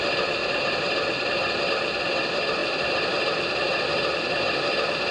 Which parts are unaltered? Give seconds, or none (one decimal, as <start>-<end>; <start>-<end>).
0.0-5.1